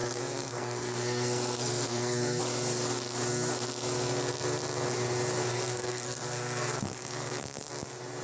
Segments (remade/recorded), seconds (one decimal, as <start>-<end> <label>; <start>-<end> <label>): 0.0-2.4 remade; 2.4-5.5 recorded; 5.5-7.7 remade; 7.7-8.2 recorded